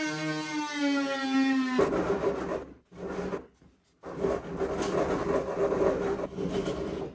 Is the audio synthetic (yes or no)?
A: no